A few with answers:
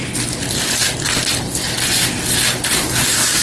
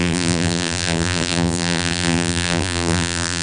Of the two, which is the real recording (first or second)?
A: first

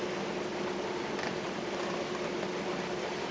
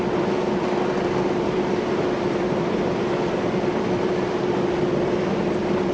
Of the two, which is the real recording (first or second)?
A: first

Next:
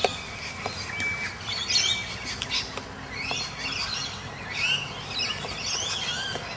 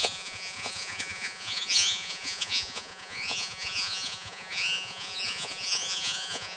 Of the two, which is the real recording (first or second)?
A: first